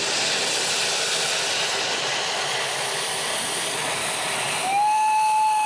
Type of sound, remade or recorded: recorded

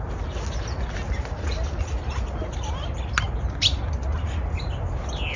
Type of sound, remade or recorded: recorded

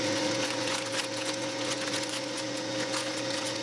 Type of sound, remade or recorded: remade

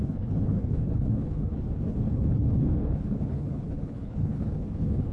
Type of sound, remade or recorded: remade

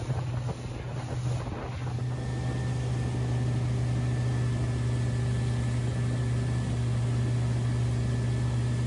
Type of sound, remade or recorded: recorded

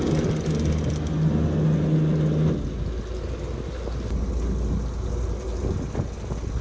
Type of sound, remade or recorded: recorded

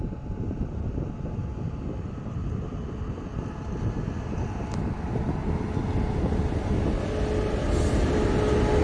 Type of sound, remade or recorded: recorded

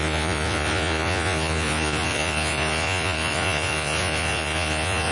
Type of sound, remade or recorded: remade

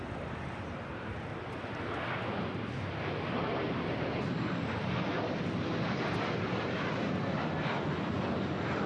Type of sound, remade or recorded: recorded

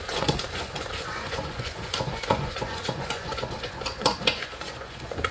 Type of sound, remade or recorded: remade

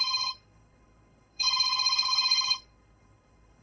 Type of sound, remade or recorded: remade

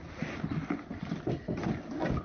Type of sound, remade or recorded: recorded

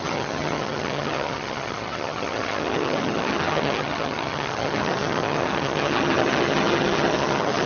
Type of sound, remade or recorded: remade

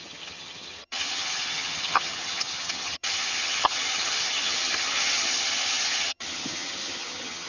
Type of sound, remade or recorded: remade